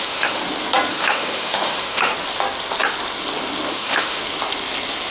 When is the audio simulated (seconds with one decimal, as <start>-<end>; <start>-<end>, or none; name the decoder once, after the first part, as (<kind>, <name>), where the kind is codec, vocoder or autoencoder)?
0.0-0.4 (autoencoder, DAC-VAE); 0.9-2.1; 3.7-4.2